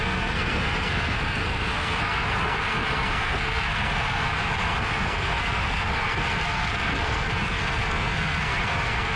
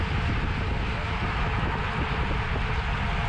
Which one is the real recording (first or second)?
second